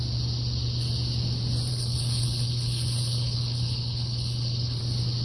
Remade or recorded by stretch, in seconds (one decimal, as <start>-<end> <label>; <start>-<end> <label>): 0.0-1.7 recorded; 1.7-4.8 remade; 4.8-5.2 recorded